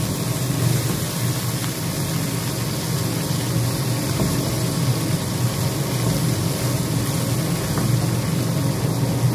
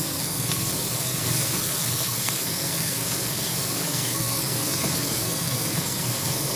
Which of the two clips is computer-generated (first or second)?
second